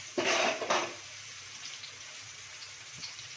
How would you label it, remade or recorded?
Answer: remade